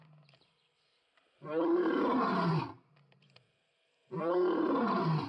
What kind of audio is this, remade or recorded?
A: remade